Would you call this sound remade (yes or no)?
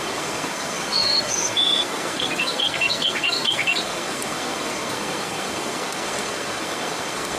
yes